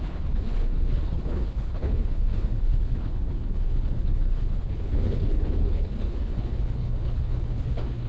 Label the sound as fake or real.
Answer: fake